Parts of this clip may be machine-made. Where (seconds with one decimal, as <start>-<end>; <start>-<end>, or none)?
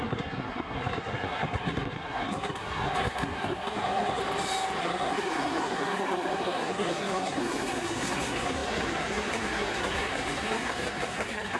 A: 0.0-4.2; 4.8-11.6